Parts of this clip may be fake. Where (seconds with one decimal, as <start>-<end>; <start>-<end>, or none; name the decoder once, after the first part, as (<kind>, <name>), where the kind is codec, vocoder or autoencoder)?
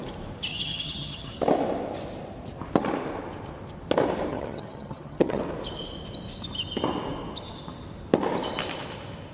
0.5-1.3 (vocoder, HiFi-GAN); 4.3-5.4